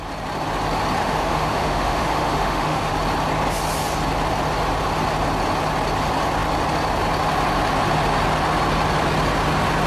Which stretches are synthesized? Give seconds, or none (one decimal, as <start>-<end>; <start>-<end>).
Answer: 1.0-2.9